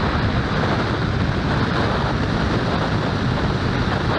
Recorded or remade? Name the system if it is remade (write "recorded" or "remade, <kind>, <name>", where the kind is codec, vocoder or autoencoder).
remade, vocoder, BigVGAN v2